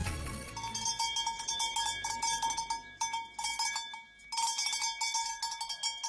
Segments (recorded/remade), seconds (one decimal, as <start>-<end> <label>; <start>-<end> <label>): 0.0-0.5 remade; 0.5-6.1 recorded